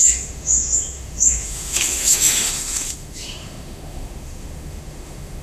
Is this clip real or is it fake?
fake